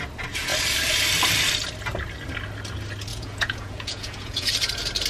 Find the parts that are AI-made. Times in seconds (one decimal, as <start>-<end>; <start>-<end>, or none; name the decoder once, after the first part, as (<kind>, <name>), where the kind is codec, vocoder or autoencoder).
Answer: 3.1-4.5 (vocoder, Vocos)

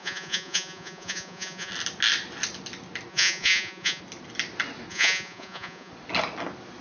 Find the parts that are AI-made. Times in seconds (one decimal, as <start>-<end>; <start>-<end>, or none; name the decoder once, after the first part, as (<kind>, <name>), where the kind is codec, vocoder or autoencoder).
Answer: 0.0-1.7 (vocoder, Vocos); 3.1-4.0; 4.9-5.9

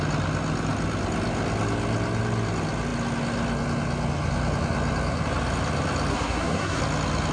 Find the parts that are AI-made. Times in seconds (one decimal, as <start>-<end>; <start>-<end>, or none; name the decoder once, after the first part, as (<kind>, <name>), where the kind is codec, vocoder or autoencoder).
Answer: 6.1-6.8 (codec, SNAC)

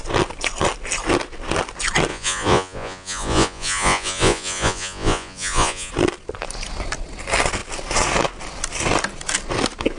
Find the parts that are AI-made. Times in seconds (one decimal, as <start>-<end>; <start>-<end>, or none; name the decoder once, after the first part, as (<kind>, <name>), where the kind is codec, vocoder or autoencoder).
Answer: 2.1-5.9 (vocoder, Vocos)

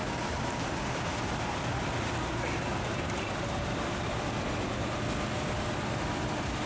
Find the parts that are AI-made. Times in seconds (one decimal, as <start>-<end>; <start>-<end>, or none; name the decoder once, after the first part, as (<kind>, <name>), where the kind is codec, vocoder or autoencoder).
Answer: none

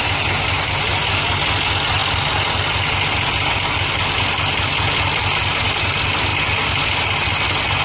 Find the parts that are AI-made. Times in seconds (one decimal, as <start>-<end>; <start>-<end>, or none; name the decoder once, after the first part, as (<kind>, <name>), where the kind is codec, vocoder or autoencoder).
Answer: none